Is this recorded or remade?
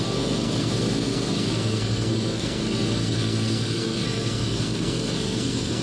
remade